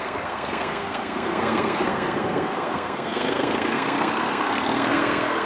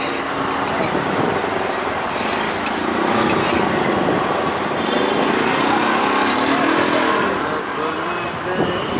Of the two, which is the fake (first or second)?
first